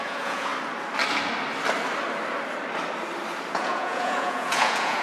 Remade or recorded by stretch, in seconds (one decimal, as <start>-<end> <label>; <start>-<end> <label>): 0.0-0.5 remade; 0.5-3.5 recorded; 3.5-5.0 remade